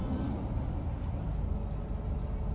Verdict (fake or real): real